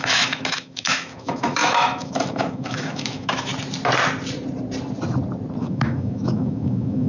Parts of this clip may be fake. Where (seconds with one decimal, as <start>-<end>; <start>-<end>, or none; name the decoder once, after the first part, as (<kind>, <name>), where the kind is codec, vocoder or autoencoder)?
0.0-3.5 (autoencoder, DAC-VAE); 5.6-7.1